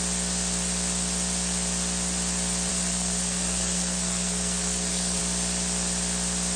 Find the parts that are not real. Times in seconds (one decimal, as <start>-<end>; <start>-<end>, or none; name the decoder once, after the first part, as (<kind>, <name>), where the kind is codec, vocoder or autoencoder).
2.7-5.2 (codec, SNAC)